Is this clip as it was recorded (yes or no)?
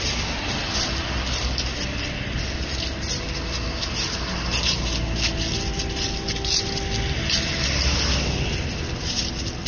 yes